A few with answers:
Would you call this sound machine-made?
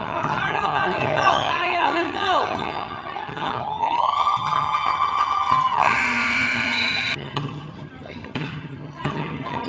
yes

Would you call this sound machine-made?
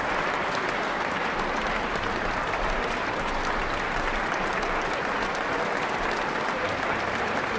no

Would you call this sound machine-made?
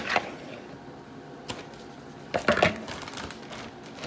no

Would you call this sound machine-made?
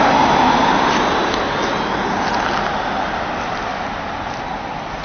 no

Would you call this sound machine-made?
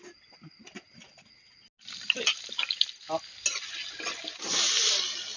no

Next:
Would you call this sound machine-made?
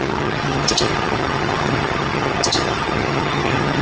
yes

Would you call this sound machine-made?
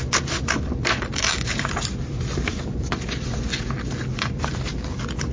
no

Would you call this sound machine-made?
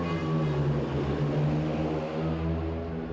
no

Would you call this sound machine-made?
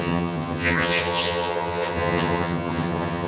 yes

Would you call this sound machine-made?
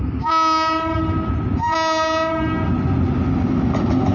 no